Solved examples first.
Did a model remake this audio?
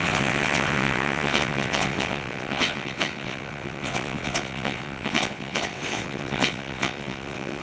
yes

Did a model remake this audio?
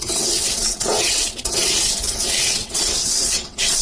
yes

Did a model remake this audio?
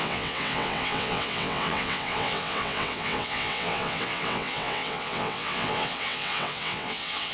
yes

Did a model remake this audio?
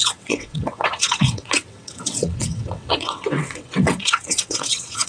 yes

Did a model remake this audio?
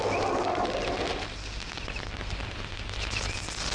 no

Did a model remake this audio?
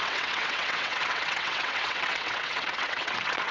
yes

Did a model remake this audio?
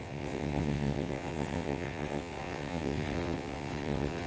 yes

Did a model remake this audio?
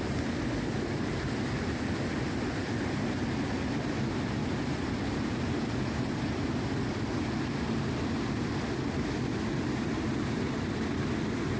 no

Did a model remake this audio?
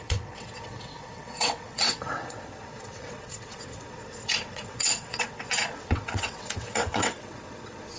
yes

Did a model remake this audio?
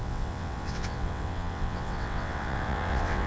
yes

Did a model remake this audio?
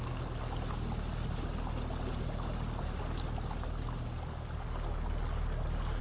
no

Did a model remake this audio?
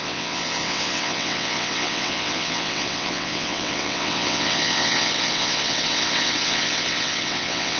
yes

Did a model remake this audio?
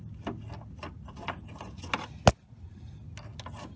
no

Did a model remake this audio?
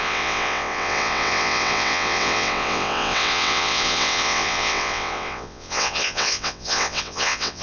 yes